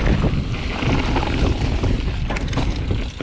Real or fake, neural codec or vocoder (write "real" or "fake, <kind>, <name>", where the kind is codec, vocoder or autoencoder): real